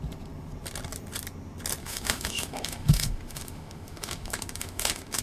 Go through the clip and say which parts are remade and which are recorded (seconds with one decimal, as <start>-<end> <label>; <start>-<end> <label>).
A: 0.0-1.8 recorded; 1.8-5.2 remade